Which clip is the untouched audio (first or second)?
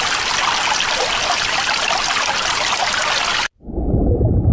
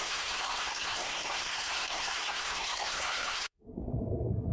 first